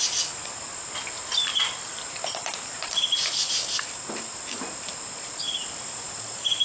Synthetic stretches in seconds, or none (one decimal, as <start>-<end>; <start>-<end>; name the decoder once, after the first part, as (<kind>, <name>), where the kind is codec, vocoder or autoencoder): 1.2-2.1 (vocoder, BigVGAN v2); 5.6-6.6